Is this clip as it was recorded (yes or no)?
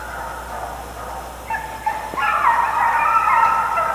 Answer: yes